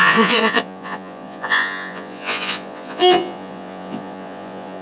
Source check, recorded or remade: remade